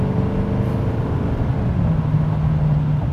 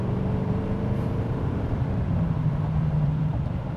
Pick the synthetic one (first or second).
second